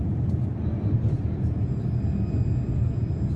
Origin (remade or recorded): recorded